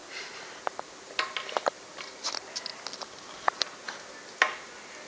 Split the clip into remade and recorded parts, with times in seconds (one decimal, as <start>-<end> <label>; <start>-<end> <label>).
0.0-5.1 recorded